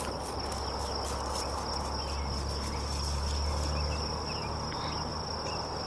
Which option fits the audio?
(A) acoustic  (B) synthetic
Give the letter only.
A